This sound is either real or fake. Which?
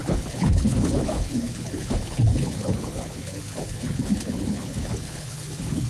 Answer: fake